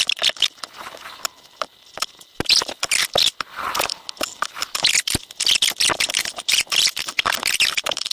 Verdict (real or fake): real